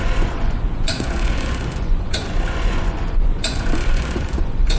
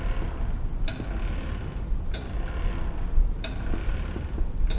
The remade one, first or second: first